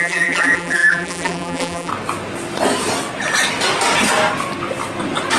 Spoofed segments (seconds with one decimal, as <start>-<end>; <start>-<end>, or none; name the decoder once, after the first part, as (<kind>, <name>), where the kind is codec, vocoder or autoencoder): 0.0-1.9 (vocoder, BigVGAN v2)

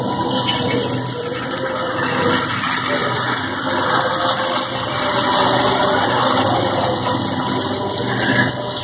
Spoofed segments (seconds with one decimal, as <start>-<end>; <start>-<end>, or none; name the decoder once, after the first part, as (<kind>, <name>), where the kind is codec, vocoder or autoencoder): none

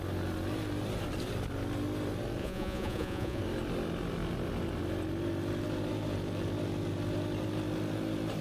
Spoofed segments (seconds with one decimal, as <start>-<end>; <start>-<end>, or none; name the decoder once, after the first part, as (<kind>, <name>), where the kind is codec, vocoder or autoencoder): 2.4-3.4 (vocoder, Vocos)

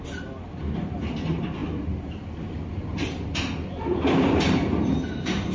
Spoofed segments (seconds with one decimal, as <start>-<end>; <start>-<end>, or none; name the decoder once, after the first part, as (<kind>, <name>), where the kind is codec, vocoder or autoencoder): none

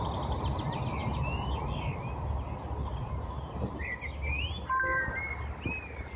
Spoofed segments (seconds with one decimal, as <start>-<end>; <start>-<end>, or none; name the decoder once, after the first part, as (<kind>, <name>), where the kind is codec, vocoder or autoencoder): 2.8-3.3 (vocoder, Vocos)